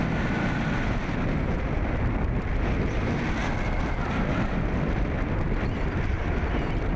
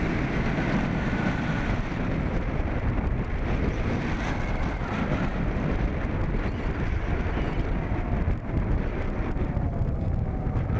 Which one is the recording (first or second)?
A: first